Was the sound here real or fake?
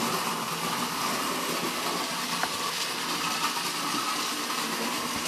real